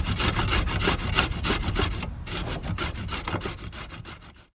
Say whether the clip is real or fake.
real